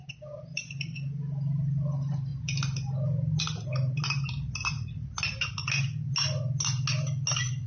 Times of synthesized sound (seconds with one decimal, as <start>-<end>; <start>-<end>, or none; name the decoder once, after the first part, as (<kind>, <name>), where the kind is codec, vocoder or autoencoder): none